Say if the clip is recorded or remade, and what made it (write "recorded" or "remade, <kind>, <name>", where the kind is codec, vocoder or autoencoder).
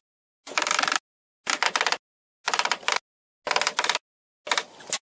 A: recorded